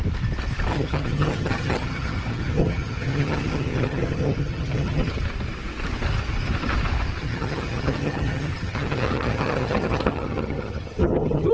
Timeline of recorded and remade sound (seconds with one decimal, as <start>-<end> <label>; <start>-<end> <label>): 0.0-0.7 recorded; 0.7-5.2 remade; 5.2-7.2 recorded; 7.2-11.5 remade